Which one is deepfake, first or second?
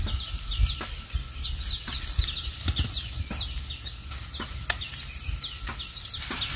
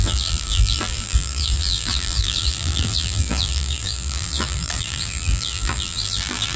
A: second